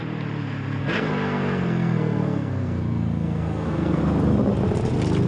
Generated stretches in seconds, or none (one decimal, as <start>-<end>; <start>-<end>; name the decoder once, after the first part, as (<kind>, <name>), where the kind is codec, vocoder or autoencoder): 0.8-4.0 (codec, SNAC)